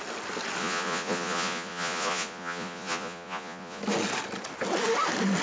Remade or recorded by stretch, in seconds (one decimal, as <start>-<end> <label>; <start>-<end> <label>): 0.0-0.6 recorded; 0.6-3.8 remade; 3.8-5.4 recorded